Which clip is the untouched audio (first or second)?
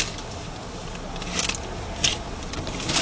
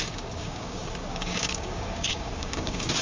first